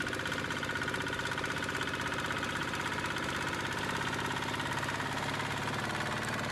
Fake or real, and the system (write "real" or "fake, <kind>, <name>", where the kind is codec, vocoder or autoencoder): real